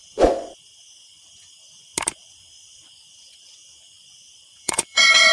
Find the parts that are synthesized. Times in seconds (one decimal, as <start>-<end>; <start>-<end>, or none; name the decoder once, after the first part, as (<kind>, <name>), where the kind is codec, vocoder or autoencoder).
0.0-1.9 (vocoder, Vocos); 2.9-5.3